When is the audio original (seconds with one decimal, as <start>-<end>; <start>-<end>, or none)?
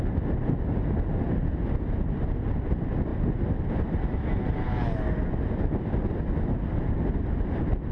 0.0-7.9